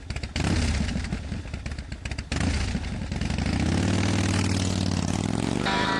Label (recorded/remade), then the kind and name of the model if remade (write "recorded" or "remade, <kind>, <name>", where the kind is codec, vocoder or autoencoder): recorded